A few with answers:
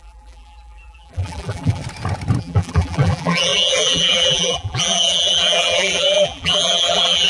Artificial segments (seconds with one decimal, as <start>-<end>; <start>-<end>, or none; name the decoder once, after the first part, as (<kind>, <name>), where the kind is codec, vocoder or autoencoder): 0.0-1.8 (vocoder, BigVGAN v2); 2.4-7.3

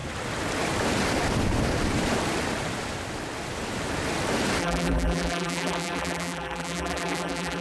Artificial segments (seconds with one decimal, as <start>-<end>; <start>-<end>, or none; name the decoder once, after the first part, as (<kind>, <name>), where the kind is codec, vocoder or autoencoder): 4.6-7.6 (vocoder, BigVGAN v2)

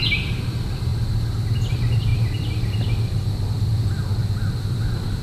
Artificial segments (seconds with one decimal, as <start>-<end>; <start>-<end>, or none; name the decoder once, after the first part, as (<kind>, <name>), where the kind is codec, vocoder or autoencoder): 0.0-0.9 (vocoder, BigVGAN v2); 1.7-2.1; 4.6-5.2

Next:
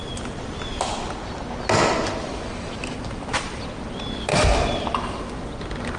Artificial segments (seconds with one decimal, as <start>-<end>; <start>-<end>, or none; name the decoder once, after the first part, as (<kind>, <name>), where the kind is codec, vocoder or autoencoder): 2.3-3.6 (vocoder, BigVGAN v2); 4.3-5.4

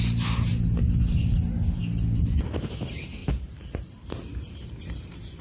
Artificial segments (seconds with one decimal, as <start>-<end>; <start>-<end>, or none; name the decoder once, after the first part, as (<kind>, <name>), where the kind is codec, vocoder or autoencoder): 3.2-4.1 (vocoder, BigVGAN v2)